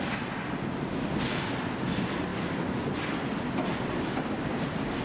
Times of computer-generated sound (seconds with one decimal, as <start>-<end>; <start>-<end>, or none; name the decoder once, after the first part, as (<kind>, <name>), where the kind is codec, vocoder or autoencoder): none